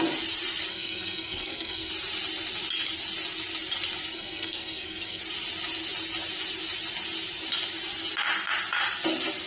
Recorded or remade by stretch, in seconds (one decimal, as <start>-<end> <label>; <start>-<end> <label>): 0.0-0.7 recorded; 0.7-1.9 remade; 1.9-4.1 recorded; 4.1-5.2 remade; 5.2-9.5 recorded